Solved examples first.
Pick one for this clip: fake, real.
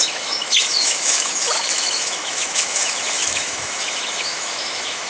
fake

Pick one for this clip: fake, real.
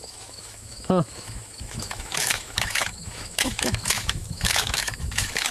fake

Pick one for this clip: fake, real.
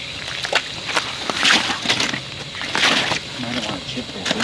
real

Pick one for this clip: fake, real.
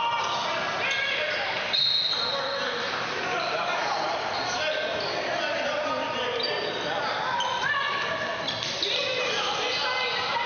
real